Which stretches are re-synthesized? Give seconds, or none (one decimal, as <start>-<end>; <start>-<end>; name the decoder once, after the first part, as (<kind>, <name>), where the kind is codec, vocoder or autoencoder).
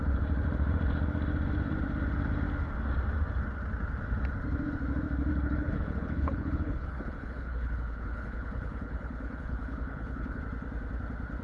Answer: 5.3-10.4 (codec, HILCodec)